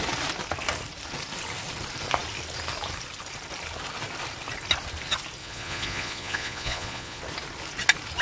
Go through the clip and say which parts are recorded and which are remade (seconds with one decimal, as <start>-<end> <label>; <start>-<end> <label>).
0.0-5.4 recorded; 5.4-7.2 remade; 7.2-8.2 recorded